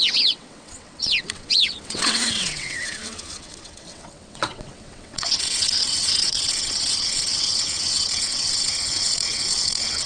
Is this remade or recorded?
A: remade